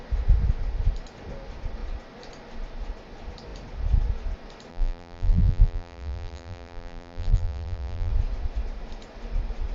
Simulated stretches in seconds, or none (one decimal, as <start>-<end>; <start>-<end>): 4.7-8.1